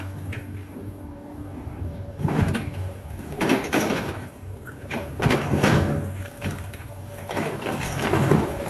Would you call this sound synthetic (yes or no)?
yes